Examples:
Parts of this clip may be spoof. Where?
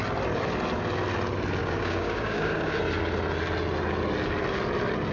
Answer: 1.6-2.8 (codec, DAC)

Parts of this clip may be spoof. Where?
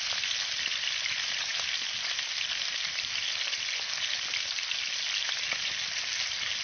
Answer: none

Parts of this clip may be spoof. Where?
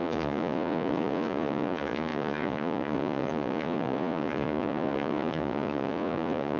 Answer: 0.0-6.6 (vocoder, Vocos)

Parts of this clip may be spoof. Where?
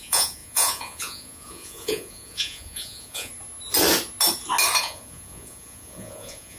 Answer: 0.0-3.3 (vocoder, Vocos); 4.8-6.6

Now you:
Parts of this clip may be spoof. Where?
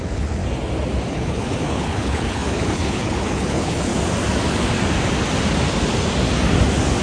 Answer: 0.0-0.4 (codec, HILCodec); 1.1-3.9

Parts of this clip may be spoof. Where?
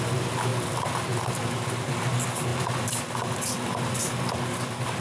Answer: none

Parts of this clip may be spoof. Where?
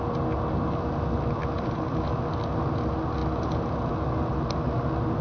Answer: 1.4-2.1 (vocoder, BigVGAN v2); 3.2-3.9